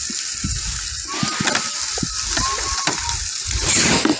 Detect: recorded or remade recorded